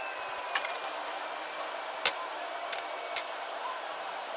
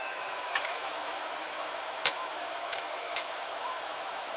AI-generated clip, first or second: second